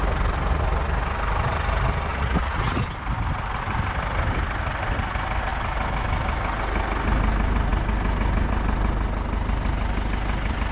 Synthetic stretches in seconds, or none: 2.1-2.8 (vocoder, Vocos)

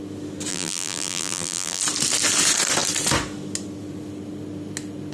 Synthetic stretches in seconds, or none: 0.5-1.8 (vocoder, BigVGAN v2)